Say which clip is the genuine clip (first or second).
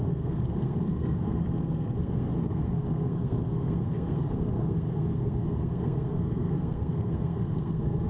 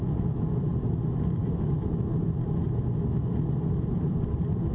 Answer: second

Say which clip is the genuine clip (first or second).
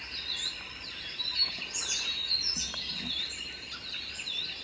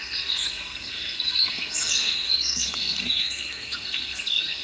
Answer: first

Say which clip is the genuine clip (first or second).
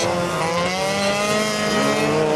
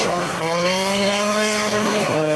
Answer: first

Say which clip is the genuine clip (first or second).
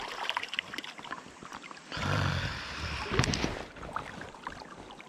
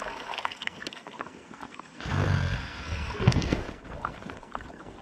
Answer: first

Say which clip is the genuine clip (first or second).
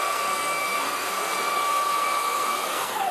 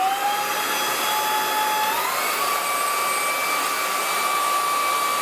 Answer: second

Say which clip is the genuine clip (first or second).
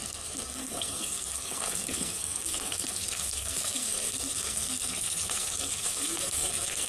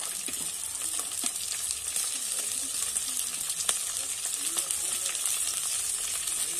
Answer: second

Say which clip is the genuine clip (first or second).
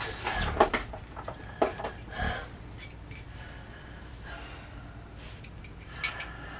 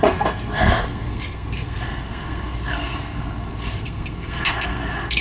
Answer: first